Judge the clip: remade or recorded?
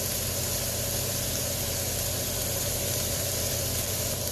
remade